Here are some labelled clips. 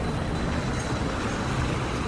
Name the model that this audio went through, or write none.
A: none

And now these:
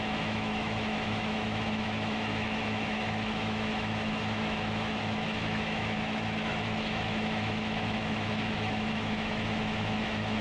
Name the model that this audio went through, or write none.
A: autoencoder, DAC-VAE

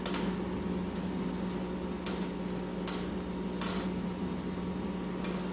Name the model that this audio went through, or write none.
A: none